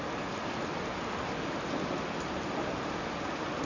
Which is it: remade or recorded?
recorded